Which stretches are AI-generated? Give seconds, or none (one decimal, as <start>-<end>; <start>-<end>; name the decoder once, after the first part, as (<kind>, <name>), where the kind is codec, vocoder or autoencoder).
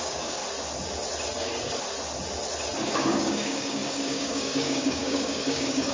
0.0-0.4 (codec, DAC); 2.9-5.9